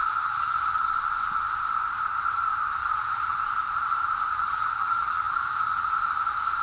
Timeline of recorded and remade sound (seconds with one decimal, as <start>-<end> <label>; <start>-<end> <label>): 0.0-0.9 remade; 0.9-2.8 recorded; 2.8-3.4 remade; 3.4-4.3 recorded; 4.3-5.9 remade; 5.9-6.6 recorded